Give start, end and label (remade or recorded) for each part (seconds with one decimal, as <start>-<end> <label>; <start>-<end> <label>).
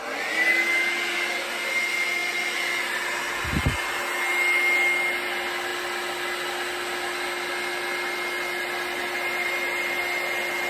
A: 0.0-10.7 recorded